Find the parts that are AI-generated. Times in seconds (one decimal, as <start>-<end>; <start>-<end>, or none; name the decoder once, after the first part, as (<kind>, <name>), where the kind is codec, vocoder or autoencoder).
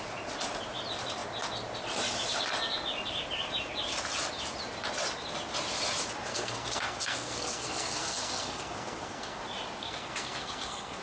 6.3-9.4 (codec, SNAC); 9.8-11.0